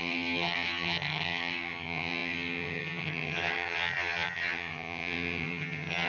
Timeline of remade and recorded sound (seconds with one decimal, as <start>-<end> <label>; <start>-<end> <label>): 0.0-6.1 remade